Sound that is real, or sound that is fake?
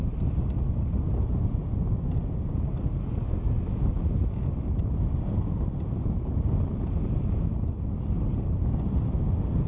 real